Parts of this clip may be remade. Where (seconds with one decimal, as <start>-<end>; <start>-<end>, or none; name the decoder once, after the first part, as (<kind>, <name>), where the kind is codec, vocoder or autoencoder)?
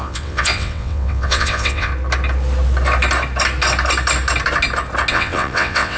0.0-1.9 (vocoder, WaveNeXt); 5.1-6.0